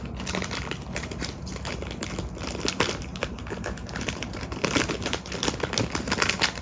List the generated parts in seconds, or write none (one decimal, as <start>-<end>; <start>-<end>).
3.1-5.3